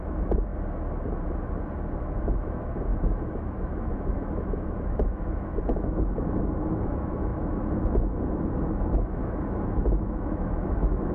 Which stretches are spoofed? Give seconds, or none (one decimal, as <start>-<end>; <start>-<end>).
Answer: 0.0-0.5; 2.0-11.1